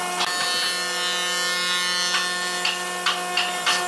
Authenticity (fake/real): real